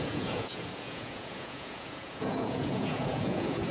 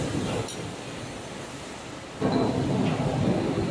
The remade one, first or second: first